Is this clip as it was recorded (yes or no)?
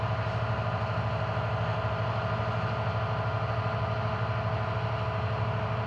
yes